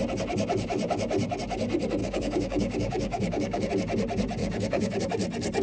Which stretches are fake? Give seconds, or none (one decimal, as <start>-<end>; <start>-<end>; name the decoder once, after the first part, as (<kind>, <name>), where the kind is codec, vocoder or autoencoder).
2.0-3.7 (codec, DAC); 4.4-5.0